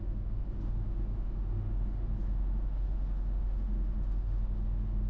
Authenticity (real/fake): fake